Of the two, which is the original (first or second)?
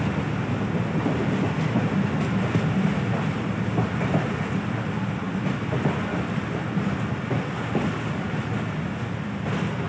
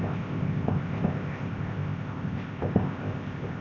first